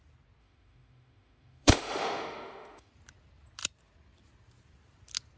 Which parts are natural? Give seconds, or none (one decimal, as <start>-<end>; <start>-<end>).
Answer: 0.0-0.4; 2.9-5.4